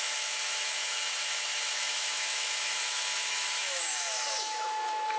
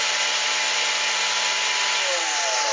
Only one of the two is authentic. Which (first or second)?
second